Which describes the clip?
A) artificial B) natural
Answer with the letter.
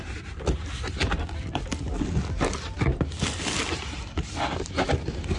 B